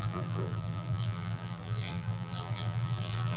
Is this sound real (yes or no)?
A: no